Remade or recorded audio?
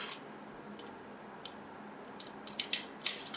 recorded